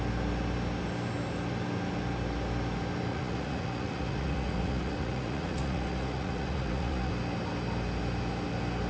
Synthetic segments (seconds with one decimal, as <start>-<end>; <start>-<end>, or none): 3.1-7.1